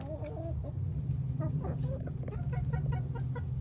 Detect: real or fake real